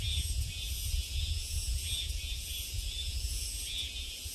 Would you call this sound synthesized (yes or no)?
yes